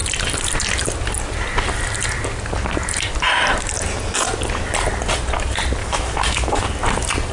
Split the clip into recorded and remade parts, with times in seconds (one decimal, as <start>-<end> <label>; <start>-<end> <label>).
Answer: 0.0-5.8 recorded; 5.8-6.6 remade; 6.6-7.3 recorded

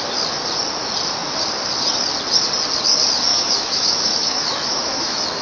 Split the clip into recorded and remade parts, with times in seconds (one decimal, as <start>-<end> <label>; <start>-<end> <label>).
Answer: 0.0-3.3 recorded; 3.3-5.4 remade

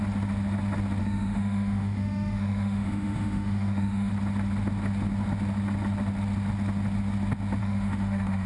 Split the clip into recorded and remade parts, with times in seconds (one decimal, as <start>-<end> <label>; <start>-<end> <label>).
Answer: 0.0-1.0 recorded; 1.0-4.1 remade; 4.1-7.6 recorded; 7.6-8.5 remade

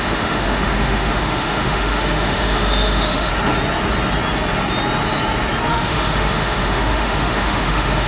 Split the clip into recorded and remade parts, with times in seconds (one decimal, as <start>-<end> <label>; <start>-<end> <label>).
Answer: 0.0-3.3 remade; 3.3-5.7 recorded; 5.7-8.1 remade

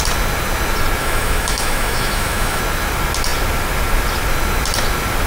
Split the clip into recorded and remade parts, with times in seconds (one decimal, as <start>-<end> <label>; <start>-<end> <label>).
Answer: 0.0-1.0 recorded; 1.0-2.6 remade; 2.6-5.3 recorded

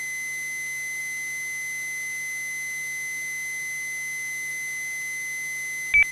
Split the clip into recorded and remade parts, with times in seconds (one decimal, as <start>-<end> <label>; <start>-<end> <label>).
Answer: 0.0-6.1 recorded